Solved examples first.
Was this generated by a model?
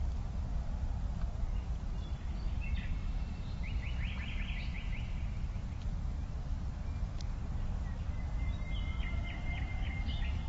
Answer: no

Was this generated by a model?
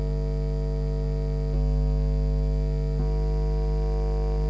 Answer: no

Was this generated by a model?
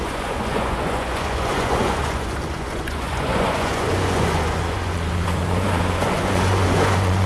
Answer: yes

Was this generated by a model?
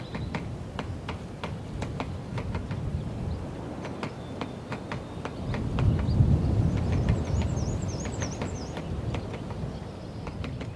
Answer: no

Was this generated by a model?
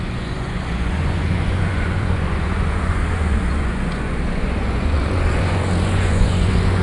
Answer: yes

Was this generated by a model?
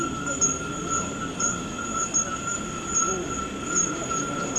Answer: no